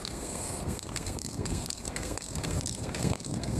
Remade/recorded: remade